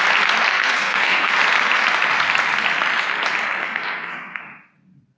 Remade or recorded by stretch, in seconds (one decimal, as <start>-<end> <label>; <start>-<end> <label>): 0.0-0.5 recorded; 0.5-1.3 remade; 1.3-3.6 recorded; 3.6-4.4 remade; 4.4-5.2 recorded